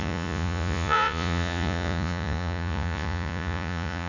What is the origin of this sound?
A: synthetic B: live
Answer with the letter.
A